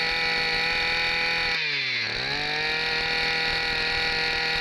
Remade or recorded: recorded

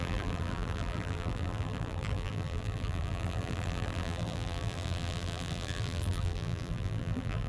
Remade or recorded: remade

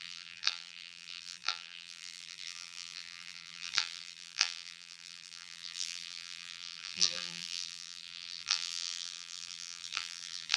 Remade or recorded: remade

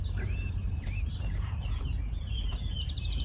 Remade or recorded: remade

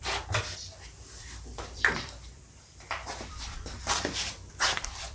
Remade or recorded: remade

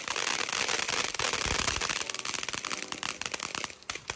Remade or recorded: recorded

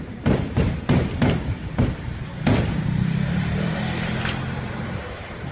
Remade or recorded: remade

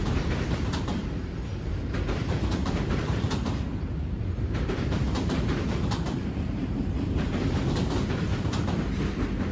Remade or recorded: remade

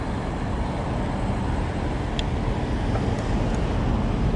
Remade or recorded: recorded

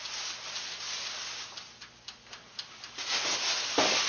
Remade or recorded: recorded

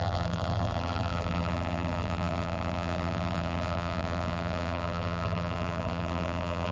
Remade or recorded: remade